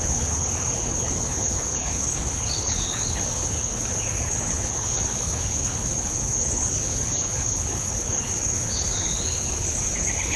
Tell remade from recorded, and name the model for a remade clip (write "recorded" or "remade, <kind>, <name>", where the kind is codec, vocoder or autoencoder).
remade, codec, HILCodec